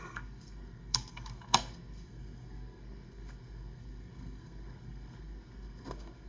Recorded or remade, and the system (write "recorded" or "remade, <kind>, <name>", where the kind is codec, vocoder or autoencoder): remade, codec, SNAC